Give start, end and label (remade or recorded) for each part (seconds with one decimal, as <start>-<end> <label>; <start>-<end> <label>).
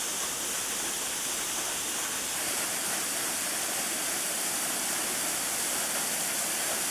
0.0-6.9 recorded